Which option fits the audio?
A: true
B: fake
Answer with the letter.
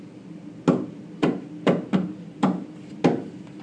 A